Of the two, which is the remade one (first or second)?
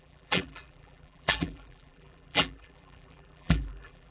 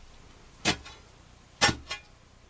first